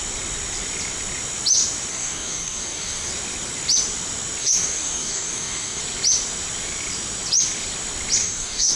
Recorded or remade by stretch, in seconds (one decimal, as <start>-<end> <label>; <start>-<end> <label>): 0.0-1.9 recorded; 1.9-3.1 remade; 3.1-4.4 recorded; 4.4-5.8 remade; 5.8-8.2 recorded; 8.2-8.8 remade